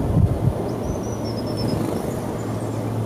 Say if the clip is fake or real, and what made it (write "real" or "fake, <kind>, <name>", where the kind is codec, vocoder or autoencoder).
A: real